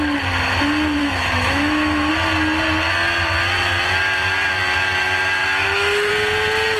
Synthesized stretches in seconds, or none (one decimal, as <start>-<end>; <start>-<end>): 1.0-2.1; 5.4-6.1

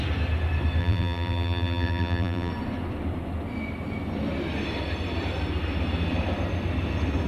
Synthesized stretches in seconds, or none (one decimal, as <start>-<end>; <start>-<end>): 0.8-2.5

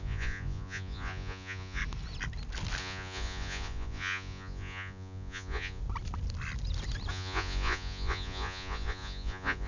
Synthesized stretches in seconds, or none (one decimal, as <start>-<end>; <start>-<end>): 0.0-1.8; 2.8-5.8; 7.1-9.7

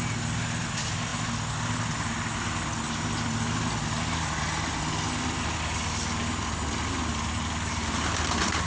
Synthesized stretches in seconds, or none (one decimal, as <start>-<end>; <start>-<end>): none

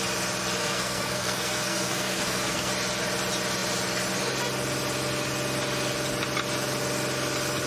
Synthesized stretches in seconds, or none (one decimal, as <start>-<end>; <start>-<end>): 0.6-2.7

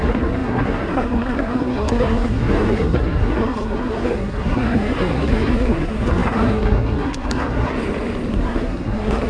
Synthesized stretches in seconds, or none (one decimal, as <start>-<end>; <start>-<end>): 0.0-7.7; 8.3-9.3